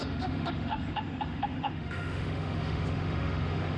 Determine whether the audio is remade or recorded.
remade